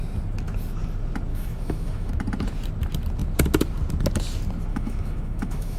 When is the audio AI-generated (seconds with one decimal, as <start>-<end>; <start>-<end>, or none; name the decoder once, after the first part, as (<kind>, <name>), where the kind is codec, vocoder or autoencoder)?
1.3-2.1 (autoencoder, DAC-VAE); 4.7-5.8